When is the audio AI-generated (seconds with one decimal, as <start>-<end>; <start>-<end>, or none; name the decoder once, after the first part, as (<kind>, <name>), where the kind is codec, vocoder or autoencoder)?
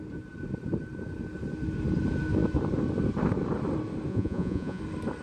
4.1-4.8 (vocoder, Vocos)